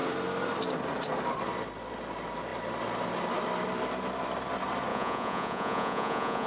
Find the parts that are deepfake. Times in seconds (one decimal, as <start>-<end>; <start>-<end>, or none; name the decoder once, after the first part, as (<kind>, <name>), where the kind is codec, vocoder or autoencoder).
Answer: 4.9-6.5 (vocoder, Vocos)